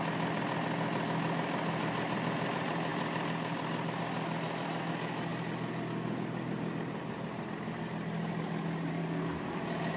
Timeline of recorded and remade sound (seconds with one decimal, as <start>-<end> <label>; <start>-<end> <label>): 0.0-9.0 recorded; 9.0-9.6 remade; 9.6-10.0 recorded

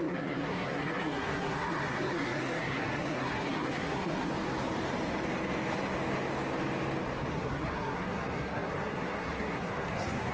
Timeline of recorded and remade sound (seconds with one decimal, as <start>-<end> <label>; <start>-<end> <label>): 0.0-4.3 remade; 4.3-7.3 recorded; 7.3-10.3 remade

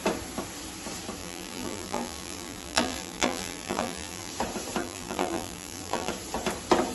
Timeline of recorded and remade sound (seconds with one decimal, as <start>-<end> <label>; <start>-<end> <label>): 0.0-1.2 recorded; 1.2-4.3 remade; 4.3-4.8 recorded; 4.8-6.1 remade; 6.1-6.9 recorded

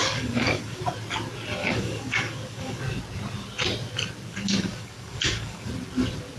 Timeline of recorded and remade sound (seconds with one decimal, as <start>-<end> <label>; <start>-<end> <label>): 0.0-0.8 remade; 0.8-1.6 recorded; 1.6-2.8 remade; 2.8-4.3 recorded; 4.3-5.7 remade; 5.7-6.4 recorded

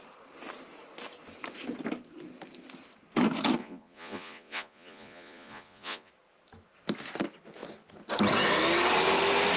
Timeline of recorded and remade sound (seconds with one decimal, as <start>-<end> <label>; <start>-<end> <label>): 0.0-3.6 recorded; 3.6-6.1 remade; 6.1-9.6 recorded

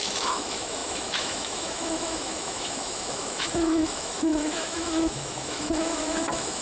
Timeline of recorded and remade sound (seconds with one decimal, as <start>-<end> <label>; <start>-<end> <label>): 0.0-6.6 remade

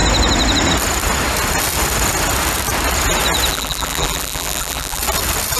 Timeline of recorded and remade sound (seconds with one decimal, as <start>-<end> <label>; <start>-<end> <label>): 0.0-3.5 recorded; 3.5-5.0 remade; 5.0-5.6 recorded